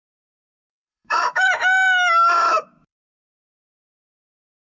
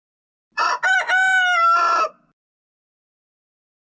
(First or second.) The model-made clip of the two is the first